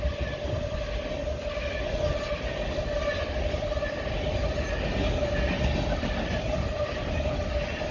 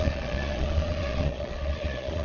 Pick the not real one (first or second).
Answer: second